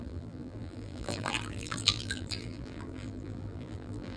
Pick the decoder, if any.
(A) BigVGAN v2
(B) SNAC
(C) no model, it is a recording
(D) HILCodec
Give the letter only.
A